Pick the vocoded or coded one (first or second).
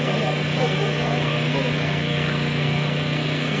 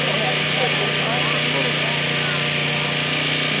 first